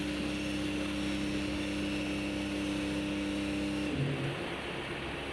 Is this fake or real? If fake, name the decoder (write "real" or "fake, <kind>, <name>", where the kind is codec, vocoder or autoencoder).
real